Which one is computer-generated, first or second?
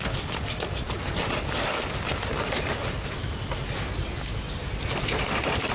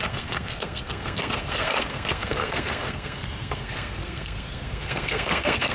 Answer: second